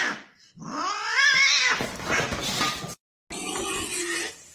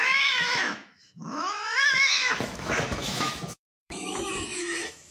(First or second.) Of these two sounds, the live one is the first